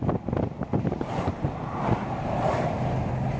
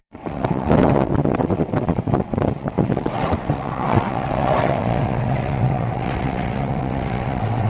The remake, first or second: second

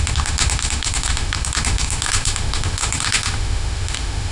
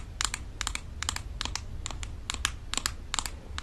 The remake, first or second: first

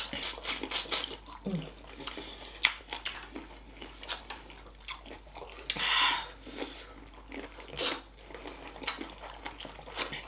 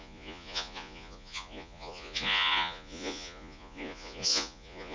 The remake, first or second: second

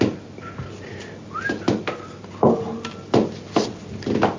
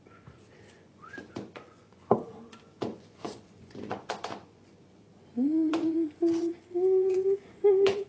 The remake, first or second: second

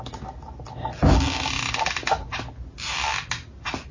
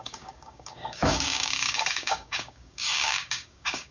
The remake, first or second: second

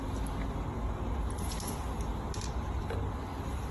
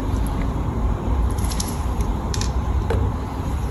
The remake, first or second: second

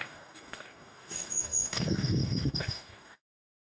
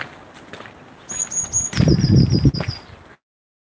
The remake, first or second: first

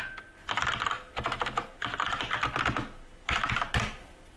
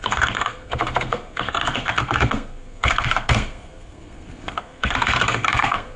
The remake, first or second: second